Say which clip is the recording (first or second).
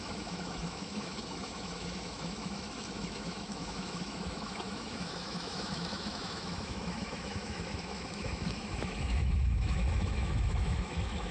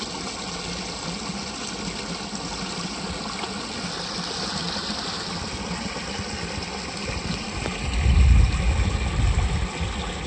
second